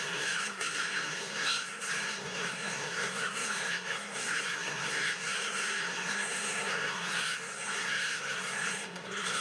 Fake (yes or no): yes